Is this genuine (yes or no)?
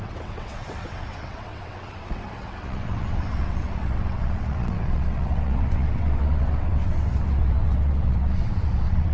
no